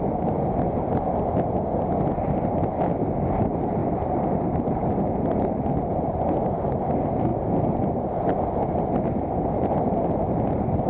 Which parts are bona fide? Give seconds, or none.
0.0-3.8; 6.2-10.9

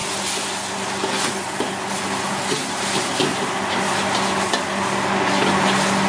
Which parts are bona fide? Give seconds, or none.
0.0-6.1

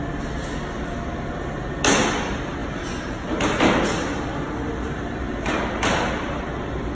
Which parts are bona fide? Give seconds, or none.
0.0-2.6

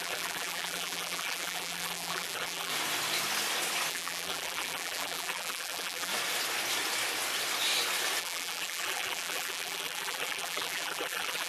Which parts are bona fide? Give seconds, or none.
2.7-3.9; 6.1-8.2

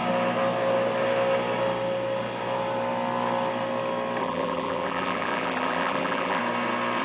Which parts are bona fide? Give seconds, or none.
0.0-4.2; 6.4-7.0